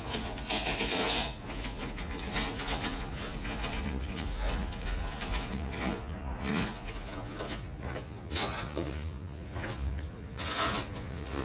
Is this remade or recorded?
remade